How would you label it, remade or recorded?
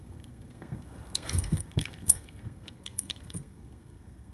remade